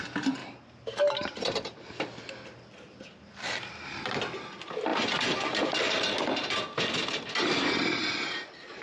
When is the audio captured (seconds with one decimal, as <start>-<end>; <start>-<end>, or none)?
0.0-0.4; 4.0-4.9; 6.8-8.8

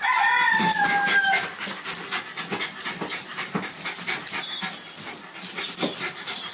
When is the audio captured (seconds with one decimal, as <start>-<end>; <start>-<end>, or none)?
0.0-3.3; 4.4-6.5

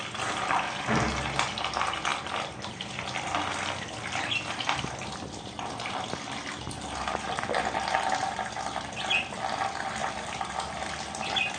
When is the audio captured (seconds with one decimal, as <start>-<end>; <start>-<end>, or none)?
0.0-2.1; 3.6-10.0; 10.9-11.6

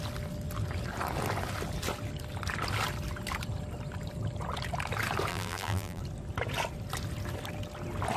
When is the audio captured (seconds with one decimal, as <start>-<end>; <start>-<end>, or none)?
0.0-5.3; 6.0-8.2

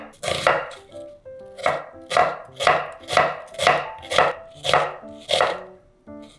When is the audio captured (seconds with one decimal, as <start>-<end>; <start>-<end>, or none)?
0.0-6.4

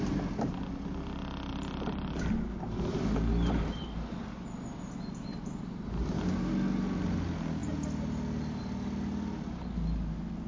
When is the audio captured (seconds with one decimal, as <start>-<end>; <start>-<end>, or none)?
0.0-1.5; 2.1-5.3; 6.5-10.5